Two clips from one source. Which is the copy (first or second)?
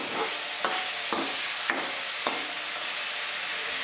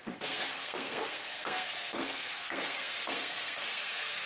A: second